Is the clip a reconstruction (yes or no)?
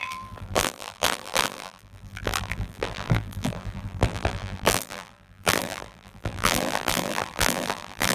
yes